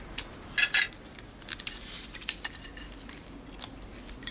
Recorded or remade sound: recorded